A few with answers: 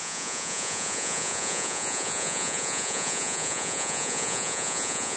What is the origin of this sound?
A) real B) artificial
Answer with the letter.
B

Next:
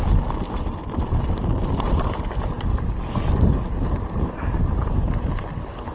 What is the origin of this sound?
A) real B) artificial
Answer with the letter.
A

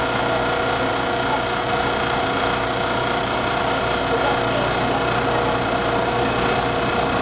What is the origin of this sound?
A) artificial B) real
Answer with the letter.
B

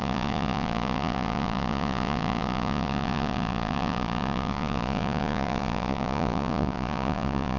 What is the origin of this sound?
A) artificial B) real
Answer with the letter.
A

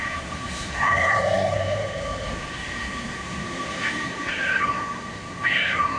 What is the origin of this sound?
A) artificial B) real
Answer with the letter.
A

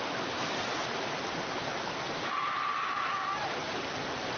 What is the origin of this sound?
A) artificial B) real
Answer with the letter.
B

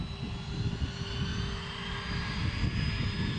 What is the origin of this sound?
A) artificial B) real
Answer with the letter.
B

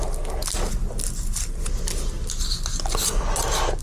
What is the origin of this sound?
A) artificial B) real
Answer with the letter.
B